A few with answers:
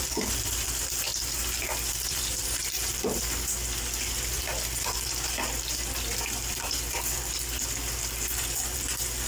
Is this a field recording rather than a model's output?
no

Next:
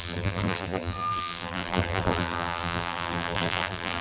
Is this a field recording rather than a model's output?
no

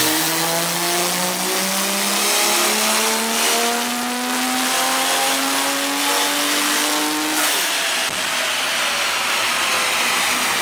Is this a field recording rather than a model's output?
yes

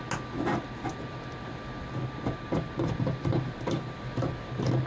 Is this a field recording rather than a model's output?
yes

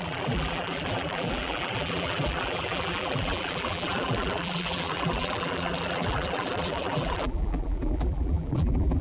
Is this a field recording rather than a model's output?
no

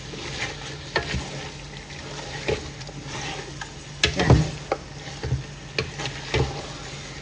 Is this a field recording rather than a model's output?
yes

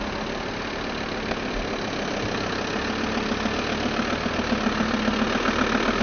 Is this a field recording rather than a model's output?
yes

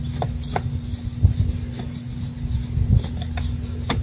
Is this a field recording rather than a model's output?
yes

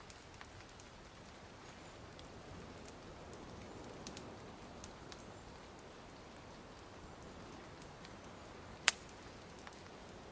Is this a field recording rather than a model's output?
yes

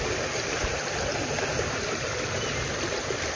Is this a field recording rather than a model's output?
yes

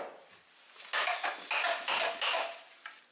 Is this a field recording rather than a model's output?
yes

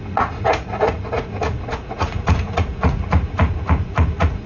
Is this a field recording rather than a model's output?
no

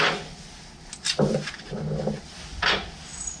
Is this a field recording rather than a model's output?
yes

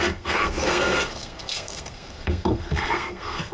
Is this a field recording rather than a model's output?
no